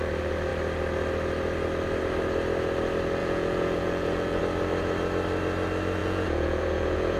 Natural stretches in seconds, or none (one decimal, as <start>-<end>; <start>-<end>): 0.0-3.2; 4.4-6.0